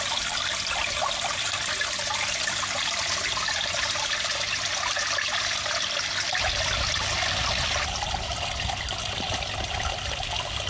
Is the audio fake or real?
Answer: real